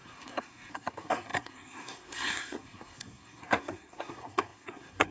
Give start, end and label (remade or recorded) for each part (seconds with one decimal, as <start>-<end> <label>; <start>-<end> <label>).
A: 0.0-5.1 remade